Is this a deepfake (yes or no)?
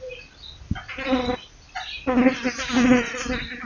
no